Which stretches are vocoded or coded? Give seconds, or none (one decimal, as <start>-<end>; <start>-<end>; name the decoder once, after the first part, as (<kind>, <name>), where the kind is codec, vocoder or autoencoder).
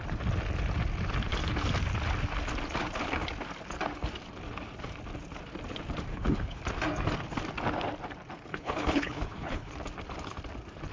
6.1-6.6 (codec, HILCodec); 8.5-9.7